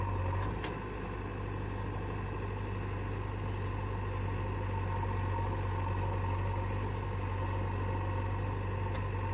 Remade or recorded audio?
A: recorded